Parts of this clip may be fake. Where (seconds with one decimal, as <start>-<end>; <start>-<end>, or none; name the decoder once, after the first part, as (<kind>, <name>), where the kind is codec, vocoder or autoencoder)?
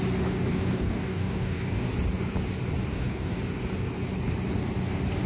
0.5-1.9 (codec, DAC); 2.9-3.4